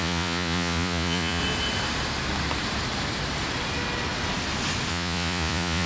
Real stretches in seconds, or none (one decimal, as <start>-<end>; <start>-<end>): 1.4-4.9